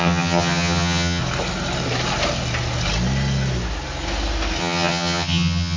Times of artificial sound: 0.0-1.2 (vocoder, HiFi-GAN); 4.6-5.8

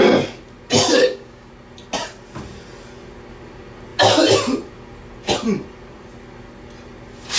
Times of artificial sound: 0.9-1.5 (codec, DAC)

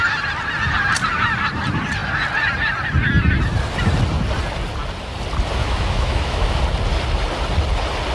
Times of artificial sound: 5.6-6.6 (autoencoder, DAC-VAE)

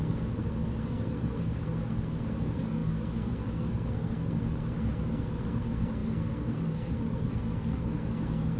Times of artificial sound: 0.0-8.6 (codec, SNAC)

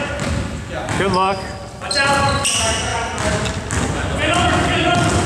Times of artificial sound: none